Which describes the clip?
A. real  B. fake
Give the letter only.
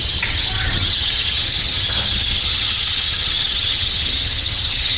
B